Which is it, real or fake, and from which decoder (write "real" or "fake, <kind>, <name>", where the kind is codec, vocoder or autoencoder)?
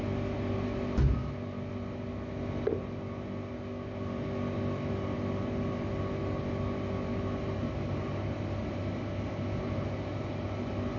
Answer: real